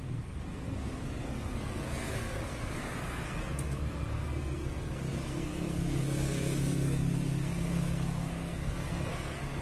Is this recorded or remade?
remade